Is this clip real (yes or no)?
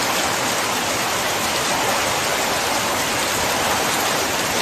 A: yes